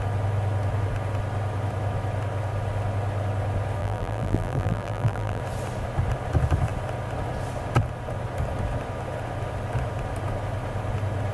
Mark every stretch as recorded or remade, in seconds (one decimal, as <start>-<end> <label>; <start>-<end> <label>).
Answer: 0.0-3.8 recorded; 3.8-5.4 remade; 5.4-11.3 recorded